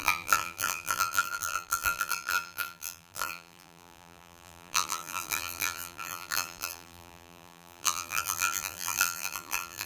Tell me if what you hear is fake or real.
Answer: fake